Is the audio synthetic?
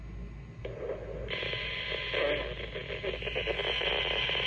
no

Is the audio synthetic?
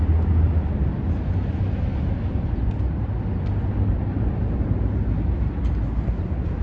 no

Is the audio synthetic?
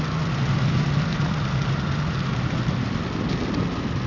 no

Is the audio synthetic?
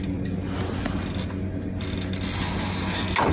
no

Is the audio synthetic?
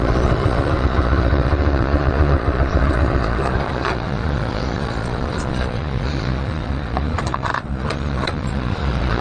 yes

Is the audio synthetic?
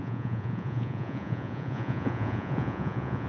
yes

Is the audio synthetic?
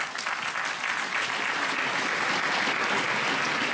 no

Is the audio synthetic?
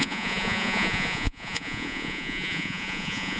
yes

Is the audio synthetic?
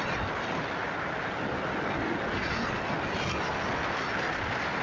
no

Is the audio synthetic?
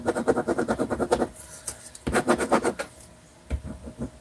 no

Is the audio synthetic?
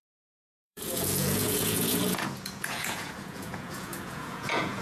yes